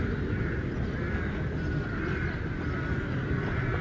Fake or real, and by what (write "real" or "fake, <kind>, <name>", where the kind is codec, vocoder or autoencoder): real